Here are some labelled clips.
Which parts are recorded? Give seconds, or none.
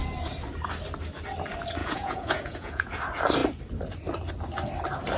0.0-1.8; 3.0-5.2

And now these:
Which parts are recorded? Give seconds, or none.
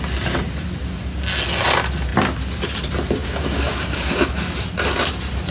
0.0-3.2; 4.3-5.5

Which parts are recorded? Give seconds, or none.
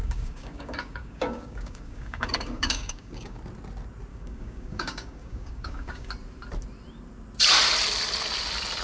3.4-4.1; 6.1-8.8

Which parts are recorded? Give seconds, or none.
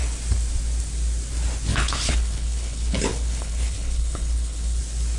0.0-1.7; 4.8-5.2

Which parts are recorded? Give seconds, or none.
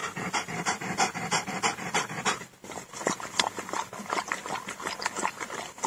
2.4-5.9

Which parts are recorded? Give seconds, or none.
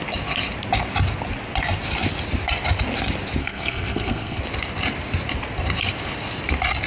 0.0-3.4; 4.4-6.9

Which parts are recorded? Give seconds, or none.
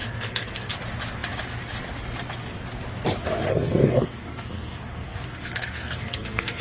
0.7-3.5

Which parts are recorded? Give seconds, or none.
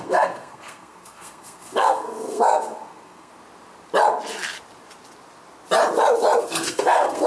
3.3-6.4